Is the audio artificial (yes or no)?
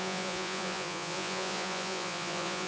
yes